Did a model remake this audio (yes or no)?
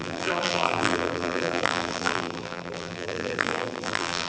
yes